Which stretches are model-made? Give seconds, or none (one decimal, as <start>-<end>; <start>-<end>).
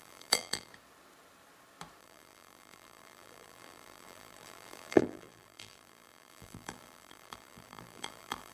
0.0-0.7; 2.0-8.5